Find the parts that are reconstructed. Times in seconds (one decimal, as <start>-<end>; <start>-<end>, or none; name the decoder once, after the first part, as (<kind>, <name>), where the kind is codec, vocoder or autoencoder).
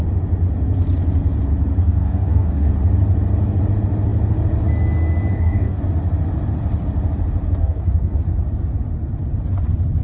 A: 1.8-2.7 (codec, DAC); 5.3-5.8; 7.6-8.2